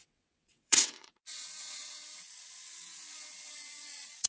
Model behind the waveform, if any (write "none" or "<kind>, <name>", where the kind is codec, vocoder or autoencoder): vocoder, WaveNeXt